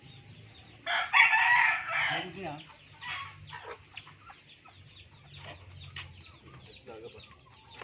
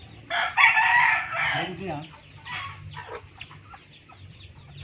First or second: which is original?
first